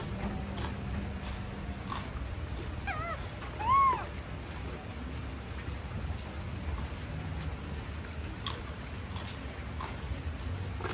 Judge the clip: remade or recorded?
recorded